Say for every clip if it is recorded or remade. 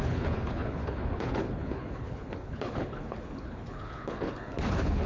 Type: remade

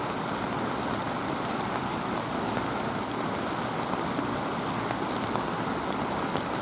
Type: recorded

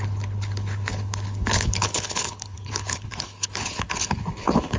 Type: remade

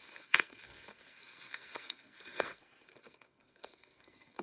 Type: remade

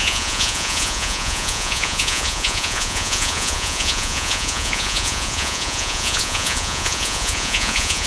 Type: remade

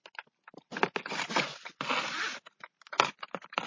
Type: recorded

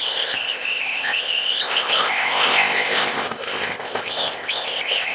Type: remade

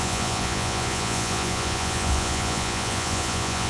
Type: remade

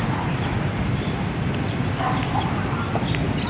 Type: recorded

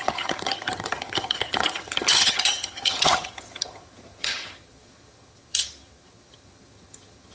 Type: remade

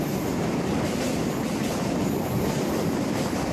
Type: recorded